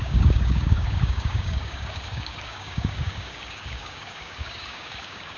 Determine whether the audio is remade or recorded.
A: remade